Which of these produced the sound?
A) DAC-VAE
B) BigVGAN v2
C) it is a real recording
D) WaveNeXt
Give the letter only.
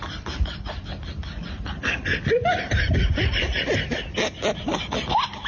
B